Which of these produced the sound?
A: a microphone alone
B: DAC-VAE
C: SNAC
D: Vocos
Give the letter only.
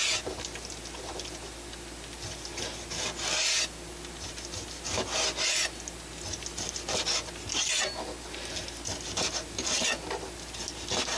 A